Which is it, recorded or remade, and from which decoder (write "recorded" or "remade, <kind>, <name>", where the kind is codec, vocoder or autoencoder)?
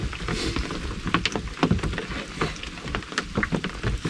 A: recorded